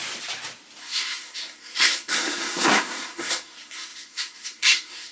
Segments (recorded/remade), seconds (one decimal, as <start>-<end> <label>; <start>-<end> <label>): 0.0-0.8 recorded; 0.8-5.1 remade